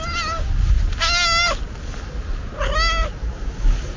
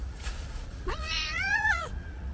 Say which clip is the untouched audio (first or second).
first